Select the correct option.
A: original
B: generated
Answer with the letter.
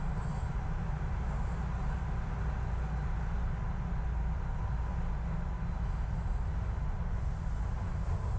A